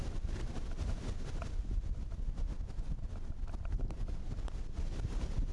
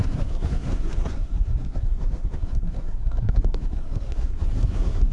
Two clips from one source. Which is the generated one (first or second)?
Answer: second